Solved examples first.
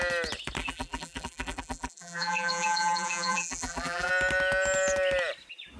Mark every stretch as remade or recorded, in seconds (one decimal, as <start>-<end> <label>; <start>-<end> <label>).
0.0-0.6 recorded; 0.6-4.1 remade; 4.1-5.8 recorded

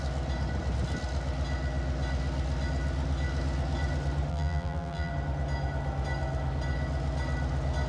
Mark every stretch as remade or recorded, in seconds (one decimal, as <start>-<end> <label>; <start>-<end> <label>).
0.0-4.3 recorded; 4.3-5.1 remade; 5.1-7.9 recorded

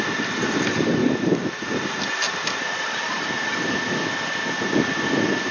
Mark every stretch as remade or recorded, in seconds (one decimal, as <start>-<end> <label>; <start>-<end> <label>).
0.0-1.0 recorded; 1.0-3.5 remade; 3.5-5.5 recorded